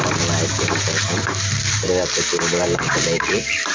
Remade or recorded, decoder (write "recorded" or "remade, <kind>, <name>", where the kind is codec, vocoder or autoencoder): remade, vocoder, BigVGAN v2